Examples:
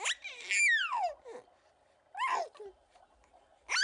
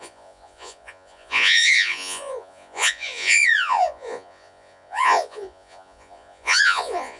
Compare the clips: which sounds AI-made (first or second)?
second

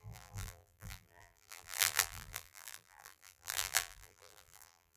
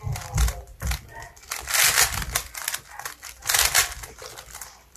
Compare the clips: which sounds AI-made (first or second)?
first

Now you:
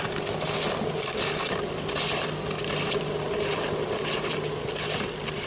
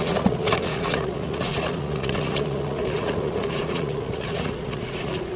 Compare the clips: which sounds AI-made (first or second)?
second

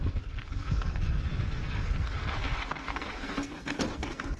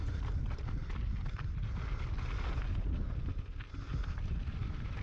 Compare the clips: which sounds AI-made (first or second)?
first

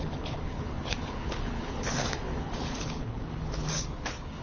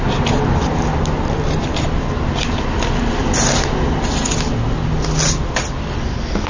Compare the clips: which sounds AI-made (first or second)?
first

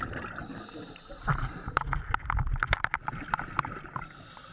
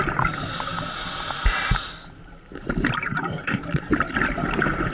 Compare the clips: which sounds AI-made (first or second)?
first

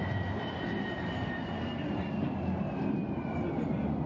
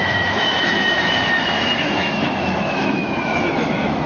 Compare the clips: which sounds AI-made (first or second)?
second